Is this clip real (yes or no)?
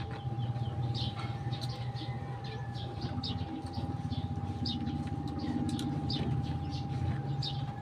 yes